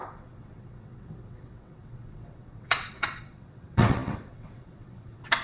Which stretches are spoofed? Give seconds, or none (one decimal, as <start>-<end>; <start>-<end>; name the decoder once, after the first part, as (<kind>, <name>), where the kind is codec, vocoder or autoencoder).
0.0-5.4 (vocoder, WaveNeXt)